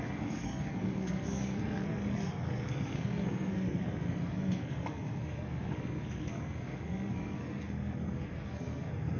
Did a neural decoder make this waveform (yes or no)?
yes